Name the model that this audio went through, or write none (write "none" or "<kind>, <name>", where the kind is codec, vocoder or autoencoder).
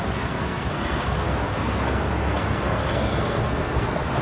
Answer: codec, SNAC